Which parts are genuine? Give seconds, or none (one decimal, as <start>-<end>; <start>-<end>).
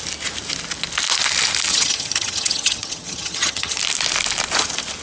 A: 0.0-1.7; 3.8-5.0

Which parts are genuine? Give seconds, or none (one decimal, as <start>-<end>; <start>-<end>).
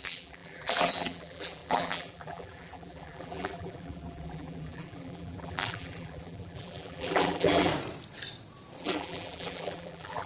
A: 7.7-8.8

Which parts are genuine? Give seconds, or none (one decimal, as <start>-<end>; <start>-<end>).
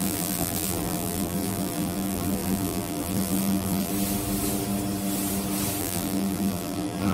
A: 3.9-5.8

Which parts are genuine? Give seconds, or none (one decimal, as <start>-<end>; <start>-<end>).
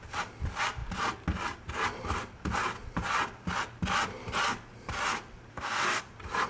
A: 0.0-5.5; 6.0-6.5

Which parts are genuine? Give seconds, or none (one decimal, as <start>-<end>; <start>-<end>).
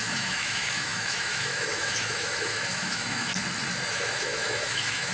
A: 3.4-3.9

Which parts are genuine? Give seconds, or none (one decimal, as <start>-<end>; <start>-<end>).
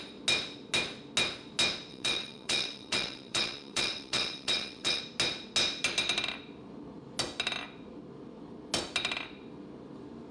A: 0.0-1.9; 5.0-10.3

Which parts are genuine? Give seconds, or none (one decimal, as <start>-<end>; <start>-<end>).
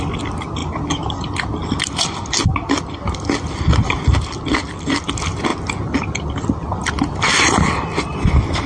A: 0.0-8.7